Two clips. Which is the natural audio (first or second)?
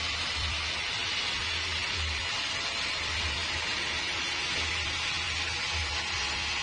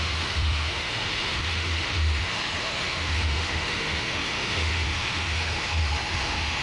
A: first